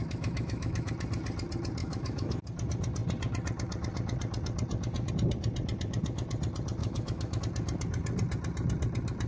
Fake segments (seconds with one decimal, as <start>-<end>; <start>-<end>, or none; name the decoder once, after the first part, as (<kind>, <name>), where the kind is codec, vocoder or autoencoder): 0.0-0.9 (autoencoder, DAC-VAE); 1.8-2.4; 6.8-7.4